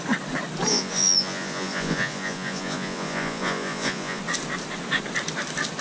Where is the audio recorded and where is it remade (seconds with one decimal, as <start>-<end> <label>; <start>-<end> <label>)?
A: 0.0-0.7 recorded; 0.7-4.2 remade; 4.2-5.8 recorded